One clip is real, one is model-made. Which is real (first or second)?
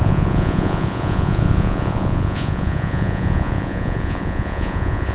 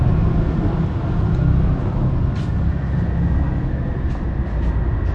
second